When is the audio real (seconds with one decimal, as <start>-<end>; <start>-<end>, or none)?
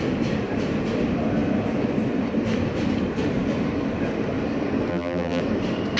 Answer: 0.0-4.9; 5.4-6.0